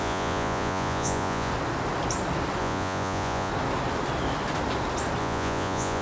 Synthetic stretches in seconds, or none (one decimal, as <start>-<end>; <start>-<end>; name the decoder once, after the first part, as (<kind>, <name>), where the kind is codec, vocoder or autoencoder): 0.0-1.5 (vocoder, Vocos); 2.6-3.5; 5.2-6.0